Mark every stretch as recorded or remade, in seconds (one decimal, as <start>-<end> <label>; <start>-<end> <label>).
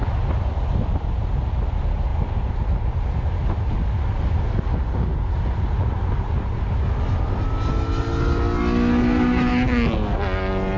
0.0-10.8 recorded